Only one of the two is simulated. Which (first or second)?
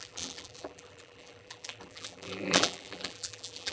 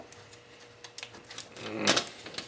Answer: first